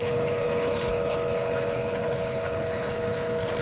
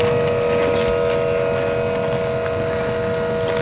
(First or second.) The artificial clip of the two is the first